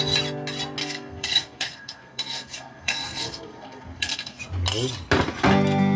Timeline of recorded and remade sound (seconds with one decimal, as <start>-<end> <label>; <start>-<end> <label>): 0.0-0.8 recorded; 0.8-4.4 remade; 4.4-6.0 recorded